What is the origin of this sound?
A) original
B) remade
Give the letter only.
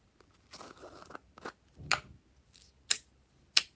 A